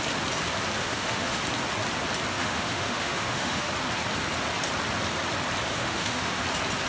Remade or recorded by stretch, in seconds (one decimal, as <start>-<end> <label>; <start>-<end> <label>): 0.0-0.8 recorded; 0.8-1.4 remade; 1.4-2.4 recorded; 2.4-3.7 remade; 3.7-5.7 recorded; 5.7-6.4 remade; 6.4-6.9 recorded